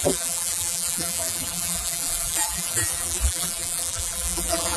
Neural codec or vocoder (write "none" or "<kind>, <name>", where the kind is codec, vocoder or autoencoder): vocoder, BigVGAN v2